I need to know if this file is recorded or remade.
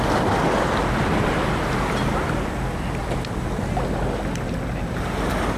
recorded